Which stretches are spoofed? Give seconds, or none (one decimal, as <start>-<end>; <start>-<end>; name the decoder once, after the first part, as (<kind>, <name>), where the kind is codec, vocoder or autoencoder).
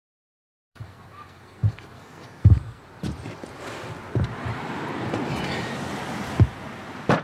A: 0.0-2.8 (codec, SNAC)